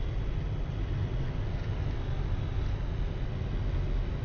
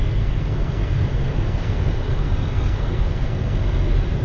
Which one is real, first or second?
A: first